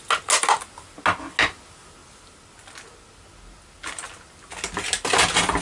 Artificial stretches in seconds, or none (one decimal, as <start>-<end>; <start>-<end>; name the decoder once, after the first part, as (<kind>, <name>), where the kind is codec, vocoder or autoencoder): none